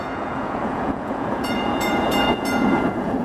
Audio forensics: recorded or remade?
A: remade